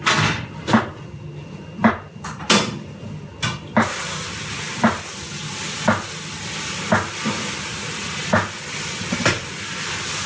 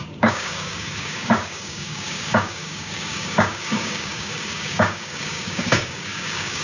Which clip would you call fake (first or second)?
second